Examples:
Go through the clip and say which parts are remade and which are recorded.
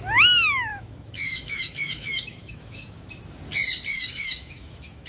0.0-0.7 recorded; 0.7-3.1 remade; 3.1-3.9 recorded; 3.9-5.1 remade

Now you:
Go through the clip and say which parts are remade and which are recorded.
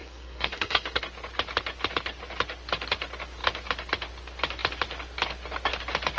0.0-1.0 remade; 1.0-6.2 recorded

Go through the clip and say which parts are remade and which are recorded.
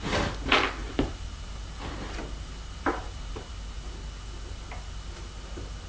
0.0-0.8 recorded; 0.8-3.5 remade; 3.5-5.9 recorded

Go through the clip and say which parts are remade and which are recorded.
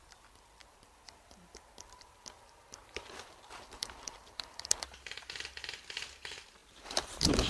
0.0-0.6 recorded; 0.6-5.1 remade; 5.1-6.6 recorded; 6.6-7.5 remade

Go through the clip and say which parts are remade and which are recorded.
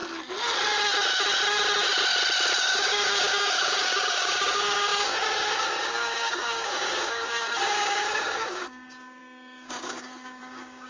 0.0-2.6 recorded; 2.6-10.9 remade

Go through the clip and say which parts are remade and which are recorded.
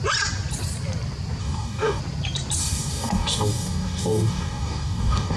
0.0-1.4 recorded; 1.4-2.0 remade; 2.0-2.6 recorded; 2.6-5.4 remade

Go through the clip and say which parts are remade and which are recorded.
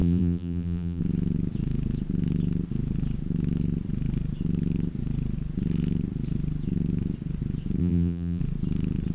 0.0-1.0 remade; 1.0-7.8 recorded; 7.8-8.4 remade; 8.4-9.1 recorded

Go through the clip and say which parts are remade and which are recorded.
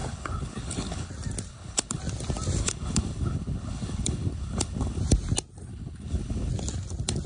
0.0-1.1 remade; 1.1-1.5 recorded; 1.5-2.0 remade; 2.0-2.6 recorded; 2.6-5.0 remade; 5.0-5.7 recorded; 5.7-6.5 remade; 6.5-7.3 recorded